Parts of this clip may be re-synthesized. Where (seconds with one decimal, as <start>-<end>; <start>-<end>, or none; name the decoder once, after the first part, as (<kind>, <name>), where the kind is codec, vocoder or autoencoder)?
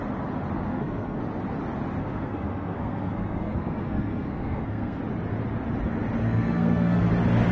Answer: 0.7-1.2 (codec, SNAC); 2.0-5.0; 6.2-7.1